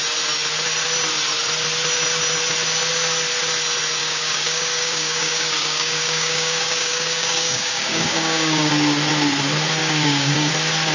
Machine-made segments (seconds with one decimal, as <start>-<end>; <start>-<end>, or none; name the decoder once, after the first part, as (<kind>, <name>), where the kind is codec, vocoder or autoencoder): 4.0-8.7 (codec, DAC); 9.8-10.5